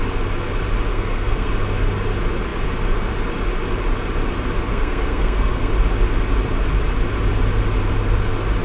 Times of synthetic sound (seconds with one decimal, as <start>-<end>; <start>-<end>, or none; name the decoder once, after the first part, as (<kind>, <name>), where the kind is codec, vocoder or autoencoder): 0.9-1.5 (codec, SNAC); 4.7-5.7